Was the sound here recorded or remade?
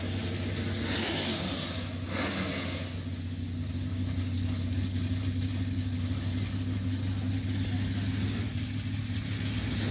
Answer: recorded